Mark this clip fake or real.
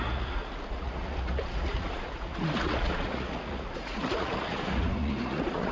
fake